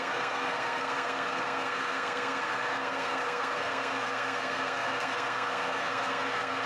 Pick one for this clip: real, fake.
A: fake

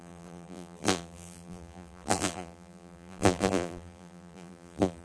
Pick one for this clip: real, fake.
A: fake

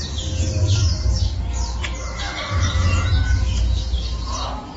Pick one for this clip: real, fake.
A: real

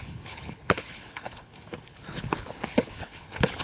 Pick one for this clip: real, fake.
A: fake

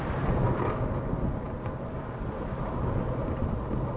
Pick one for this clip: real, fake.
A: real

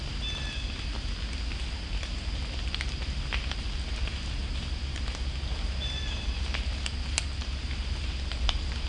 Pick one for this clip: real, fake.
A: real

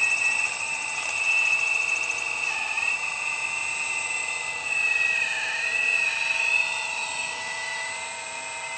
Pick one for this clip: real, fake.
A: fake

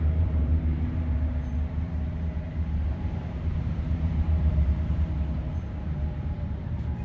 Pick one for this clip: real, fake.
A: fake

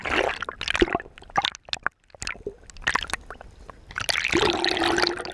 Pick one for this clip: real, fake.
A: real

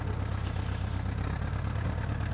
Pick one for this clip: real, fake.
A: real